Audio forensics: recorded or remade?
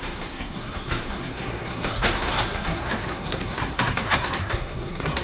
remade